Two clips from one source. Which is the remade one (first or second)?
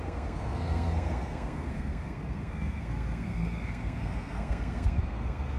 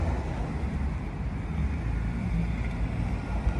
first